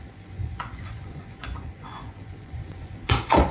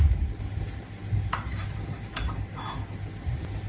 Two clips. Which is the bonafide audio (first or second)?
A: second